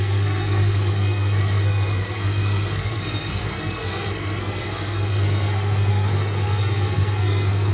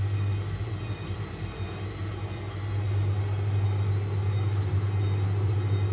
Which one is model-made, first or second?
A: first